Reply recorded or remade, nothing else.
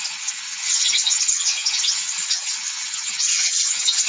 remade